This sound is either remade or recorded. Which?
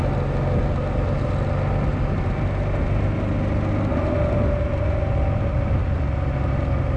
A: recorded